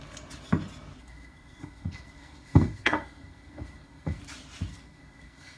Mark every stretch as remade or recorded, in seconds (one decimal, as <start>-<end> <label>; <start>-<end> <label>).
0.0-1.0 recorded; 1.0-4.2 remade; 4.2-4.7 recorded; 4.7-5.6 remade